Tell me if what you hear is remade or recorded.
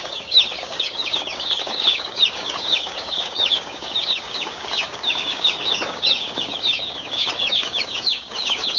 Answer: remade